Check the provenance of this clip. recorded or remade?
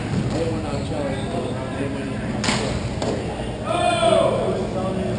recorded